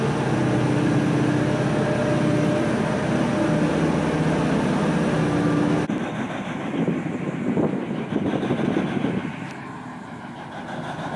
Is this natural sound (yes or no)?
yes